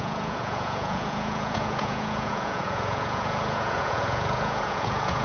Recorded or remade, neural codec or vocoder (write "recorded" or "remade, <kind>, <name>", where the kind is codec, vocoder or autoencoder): remade, vocoder, Vocos